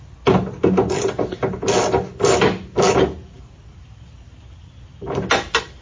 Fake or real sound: real